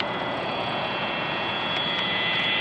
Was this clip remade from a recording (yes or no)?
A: yes